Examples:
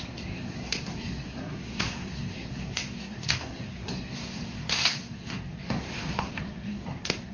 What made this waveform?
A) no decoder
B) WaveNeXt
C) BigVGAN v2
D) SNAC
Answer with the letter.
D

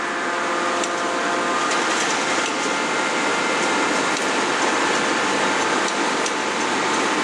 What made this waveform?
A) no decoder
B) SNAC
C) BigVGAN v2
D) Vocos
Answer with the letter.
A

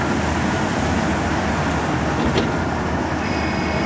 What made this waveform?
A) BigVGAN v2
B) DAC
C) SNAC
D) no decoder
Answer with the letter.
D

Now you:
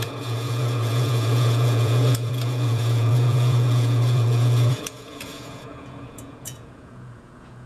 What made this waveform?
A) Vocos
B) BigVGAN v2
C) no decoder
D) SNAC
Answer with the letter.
A